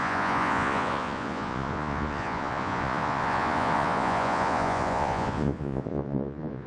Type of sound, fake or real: fake